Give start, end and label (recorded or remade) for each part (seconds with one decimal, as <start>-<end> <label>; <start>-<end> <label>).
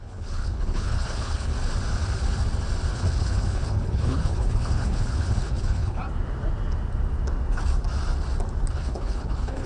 0.0-1.5 remade; 1.5-2.9 recorded; 2.9-6.0 remade; 6.0-8.7 recorded; 8.7-9.7 remade